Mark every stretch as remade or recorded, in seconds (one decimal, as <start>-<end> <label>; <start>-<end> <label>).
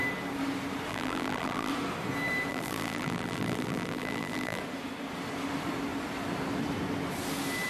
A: 0.0-0.9 recorded; 0.9-1.7 remade; 1.7-2.5 recorded; 2.5-4.6 remade; 4.6-7.7 recorded